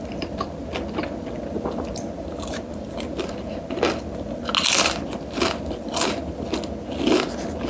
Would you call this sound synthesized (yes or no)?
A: no